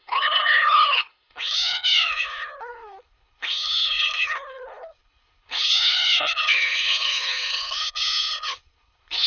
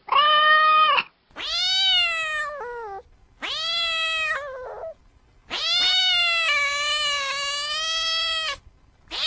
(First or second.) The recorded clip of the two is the second